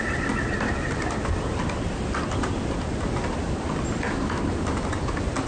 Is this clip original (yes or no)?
yes